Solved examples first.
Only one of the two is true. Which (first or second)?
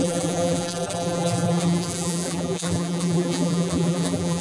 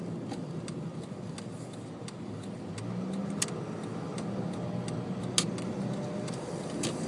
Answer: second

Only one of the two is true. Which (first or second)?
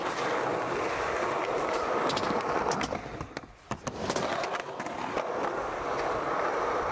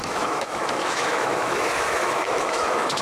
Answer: first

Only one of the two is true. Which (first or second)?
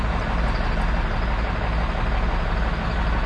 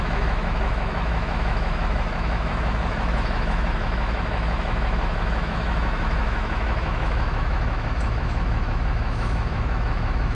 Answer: first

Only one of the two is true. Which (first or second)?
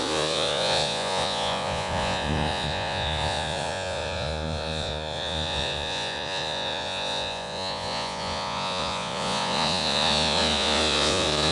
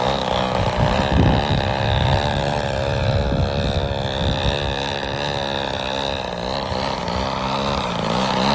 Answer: second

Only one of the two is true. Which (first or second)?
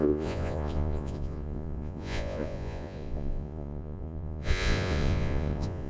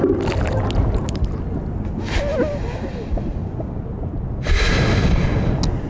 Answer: second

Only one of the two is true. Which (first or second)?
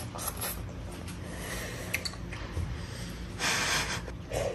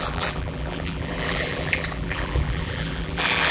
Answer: first